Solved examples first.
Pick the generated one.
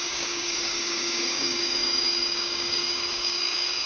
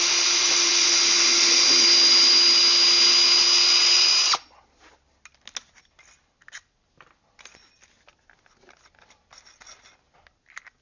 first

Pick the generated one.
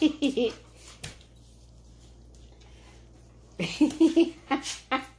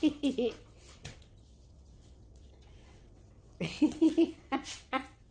second